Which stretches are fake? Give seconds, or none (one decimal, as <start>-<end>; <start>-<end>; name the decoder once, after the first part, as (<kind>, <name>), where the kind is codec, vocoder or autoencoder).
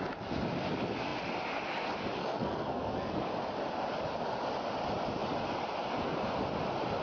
2.2-3.3 (codec, SNAC)